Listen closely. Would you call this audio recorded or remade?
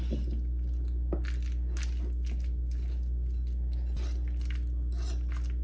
recorded